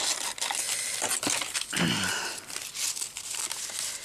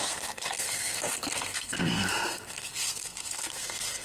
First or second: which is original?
first